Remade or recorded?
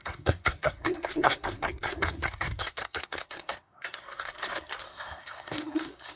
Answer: remade